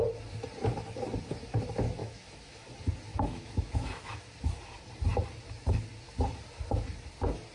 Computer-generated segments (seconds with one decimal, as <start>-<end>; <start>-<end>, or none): 2.0-2.7; 3.1-4.3